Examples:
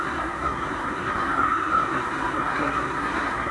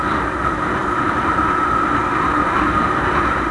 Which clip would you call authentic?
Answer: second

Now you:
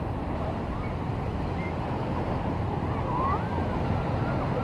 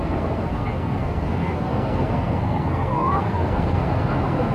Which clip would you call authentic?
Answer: first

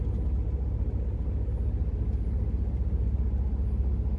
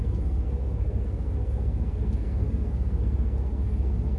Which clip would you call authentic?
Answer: first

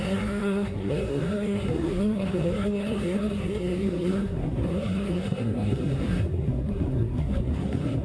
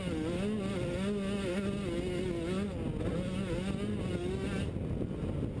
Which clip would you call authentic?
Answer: second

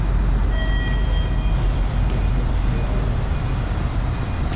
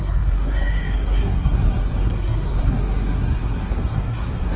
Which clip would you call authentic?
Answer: first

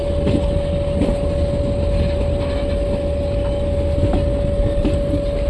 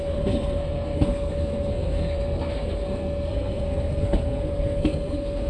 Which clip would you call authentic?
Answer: first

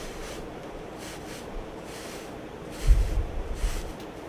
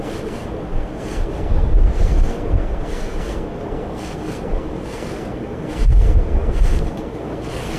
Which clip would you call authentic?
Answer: first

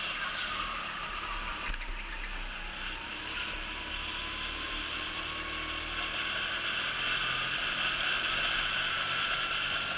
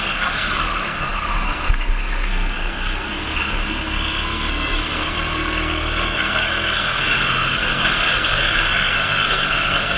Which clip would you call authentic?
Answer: first